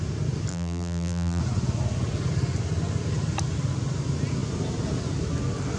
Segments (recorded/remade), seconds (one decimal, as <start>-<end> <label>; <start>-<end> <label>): 0.0-0.5 recorded; 0.5-1.4 remade; 1.4-5.8 recorded